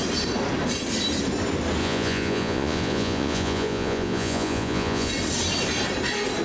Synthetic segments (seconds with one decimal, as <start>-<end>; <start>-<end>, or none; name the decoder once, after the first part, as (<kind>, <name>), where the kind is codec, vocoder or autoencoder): 1.8-5.1 (vocoder, Vocos)

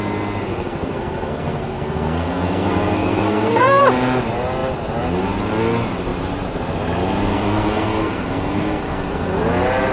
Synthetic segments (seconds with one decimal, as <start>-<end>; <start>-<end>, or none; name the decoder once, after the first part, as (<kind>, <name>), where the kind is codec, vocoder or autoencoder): 0.5-3.8 (codec, SNAC); 7.3-9.4

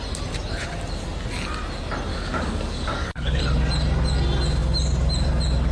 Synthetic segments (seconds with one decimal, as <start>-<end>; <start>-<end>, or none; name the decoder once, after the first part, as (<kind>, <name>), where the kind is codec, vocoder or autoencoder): 2.1-3.4 (codec, DAC)

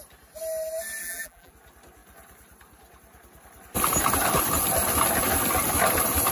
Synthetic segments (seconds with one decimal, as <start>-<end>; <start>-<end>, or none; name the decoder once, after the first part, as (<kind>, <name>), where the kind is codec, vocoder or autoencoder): 1.0-1.5 (vocoder, BigVGAN v2)

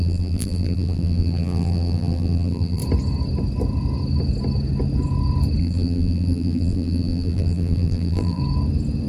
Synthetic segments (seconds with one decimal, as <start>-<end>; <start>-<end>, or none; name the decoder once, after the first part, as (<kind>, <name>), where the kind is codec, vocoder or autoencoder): 0.0-2.8 (vocoder, BigVGAN v2); 5.6-8.4

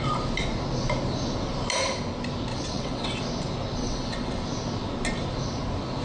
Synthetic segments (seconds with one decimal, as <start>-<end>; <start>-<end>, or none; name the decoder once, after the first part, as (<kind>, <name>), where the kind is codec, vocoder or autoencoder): 2.5-3.2 (vocoder, WaveNeXt); 3.8-4.4